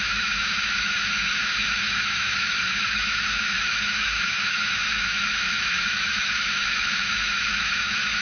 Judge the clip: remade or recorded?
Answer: remade